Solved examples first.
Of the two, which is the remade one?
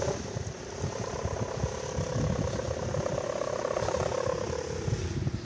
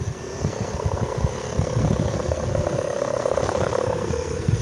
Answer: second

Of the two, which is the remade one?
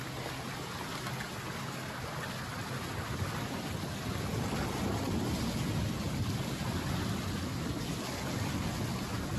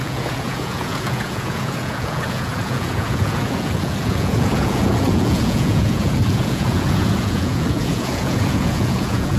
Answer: second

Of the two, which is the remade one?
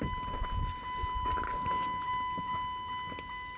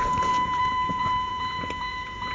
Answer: second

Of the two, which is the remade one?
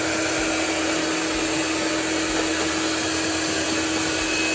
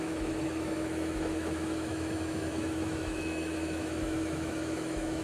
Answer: second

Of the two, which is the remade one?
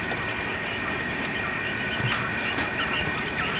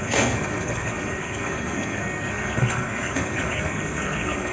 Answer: second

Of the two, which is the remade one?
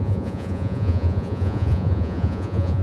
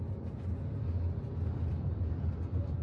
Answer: first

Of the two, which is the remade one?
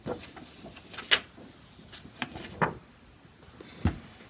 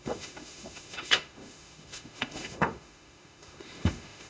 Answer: second